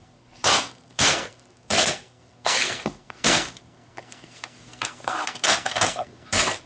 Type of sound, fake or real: fake